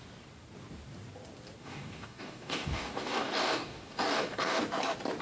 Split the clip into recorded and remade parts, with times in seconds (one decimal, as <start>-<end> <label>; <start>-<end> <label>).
0.0-1.6 recorded; 1.6-4.6 remade; 4.6-5.2 recorded